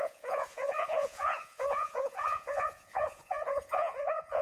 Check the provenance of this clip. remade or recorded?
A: remade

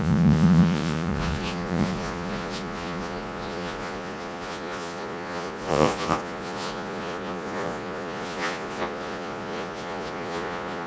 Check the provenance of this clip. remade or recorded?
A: remade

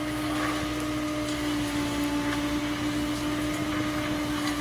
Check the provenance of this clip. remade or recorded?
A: recorded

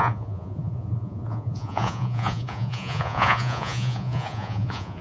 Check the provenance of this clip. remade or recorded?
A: remade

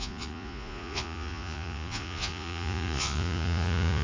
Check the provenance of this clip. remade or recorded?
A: remade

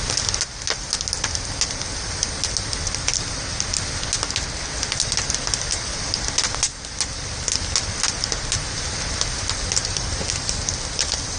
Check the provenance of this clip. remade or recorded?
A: recorded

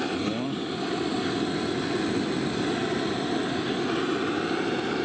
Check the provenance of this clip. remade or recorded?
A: recorded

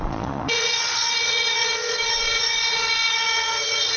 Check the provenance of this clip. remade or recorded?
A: remade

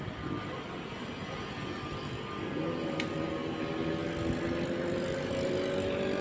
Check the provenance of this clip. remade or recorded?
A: recorded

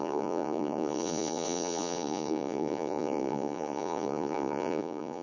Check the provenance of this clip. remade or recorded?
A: remade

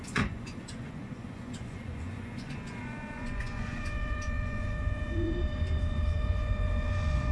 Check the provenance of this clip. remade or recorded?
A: remade